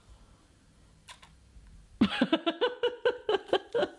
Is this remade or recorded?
recorded